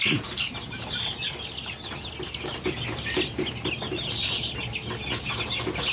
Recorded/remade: recorded